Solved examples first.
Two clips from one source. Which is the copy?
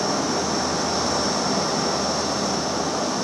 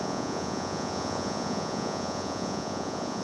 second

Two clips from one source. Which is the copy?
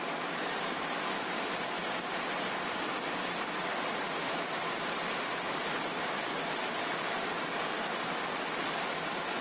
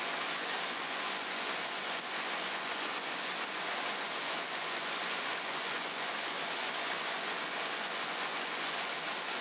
second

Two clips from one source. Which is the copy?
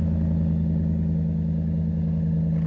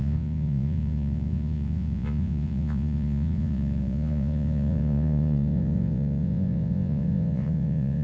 second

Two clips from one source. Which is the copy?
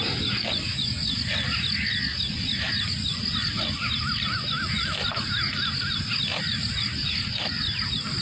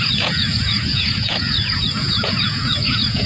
second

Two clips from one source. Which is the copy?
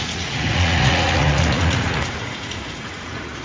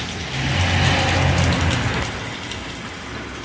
first